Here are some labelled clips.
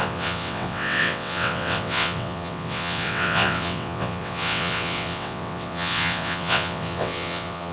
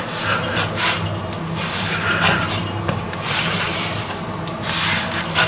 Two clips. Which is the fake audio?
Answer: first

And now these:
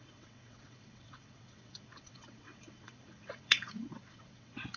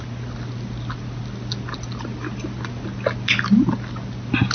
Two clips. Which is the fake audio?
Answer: first